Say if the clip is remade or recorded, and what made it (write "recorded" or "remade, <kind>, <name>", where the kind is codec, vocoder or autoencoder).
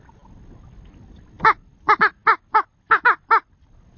recorded